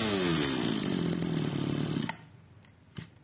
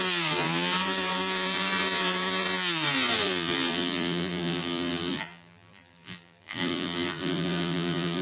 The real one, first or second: first